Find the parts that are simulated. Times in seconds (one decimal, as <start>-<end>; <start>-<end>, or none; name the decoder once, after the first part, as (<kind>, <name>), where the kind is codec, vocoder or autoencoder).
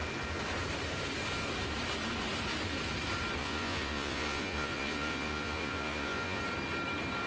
3.4-6.4 (vocoder, Vocos)